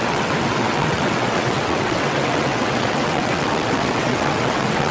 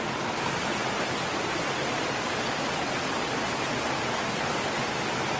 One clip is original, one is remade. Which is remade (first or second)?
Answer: first